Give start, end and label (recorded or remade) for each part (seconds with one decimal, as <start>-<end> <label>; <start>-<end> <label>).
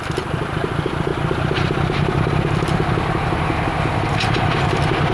0.0-5.1 recorded